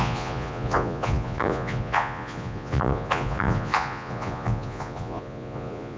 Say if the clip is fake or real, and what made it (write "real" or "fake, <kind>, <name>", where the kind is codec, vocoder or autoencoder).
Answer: fake, vocoder, Vocos